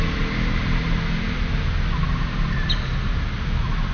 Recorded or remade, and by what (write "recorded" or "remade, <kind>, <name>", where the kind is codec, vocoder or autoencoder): recorded